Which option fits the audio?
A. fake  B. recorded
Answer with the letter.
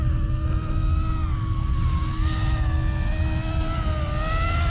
B